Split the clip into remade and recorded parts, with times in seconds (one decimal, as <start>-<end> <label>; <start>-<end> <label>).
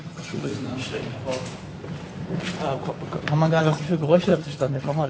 0.0-0.5 remade; 0.5-3.6 recorded; 3.6-5.1 remade